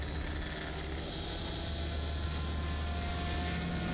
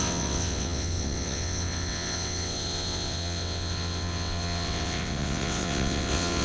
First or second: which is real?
first